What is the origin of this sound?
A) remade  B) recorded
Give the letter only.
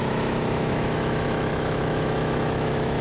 A